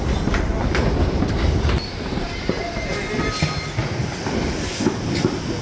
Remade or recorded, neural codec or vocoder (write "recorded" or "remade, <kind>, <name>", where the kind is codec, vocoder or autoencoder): recorded